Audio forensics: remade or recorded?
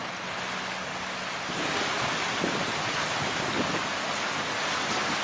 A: recorded